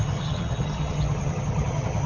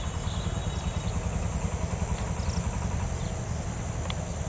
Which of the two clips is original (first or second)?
second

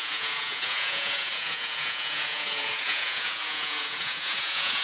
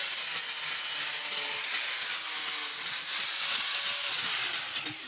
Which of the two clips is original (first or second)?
second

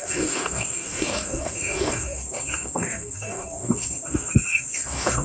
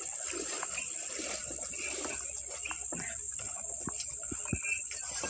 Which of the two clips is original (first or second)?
second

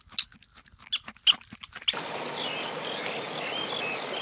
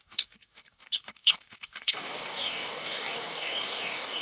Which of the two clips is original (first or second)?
first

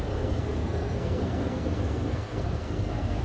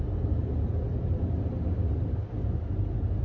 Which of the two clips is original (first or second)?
second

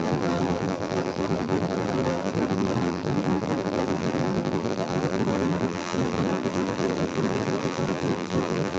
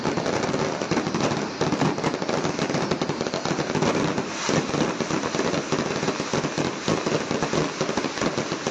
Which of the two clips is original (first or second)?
second